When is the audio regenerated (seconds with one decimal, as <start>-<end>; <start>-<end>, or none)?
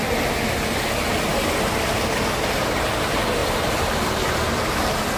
none